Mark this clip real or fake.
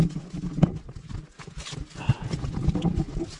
real